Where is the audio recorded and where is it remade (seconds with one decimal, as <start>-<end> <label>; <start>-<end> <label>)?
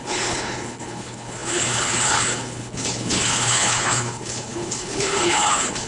0.0-5.9 remade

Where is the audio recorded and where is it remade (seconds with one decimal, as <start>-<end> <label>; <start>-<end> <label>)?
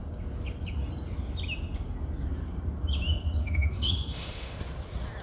0.0-3.4 recorded; 3.4-4.6 remade; 4.6-5.2 recorded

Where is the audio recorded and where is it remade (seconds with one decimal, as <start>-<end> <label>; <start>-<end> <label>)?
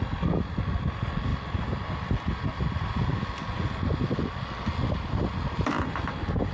0.0-6.5 recorded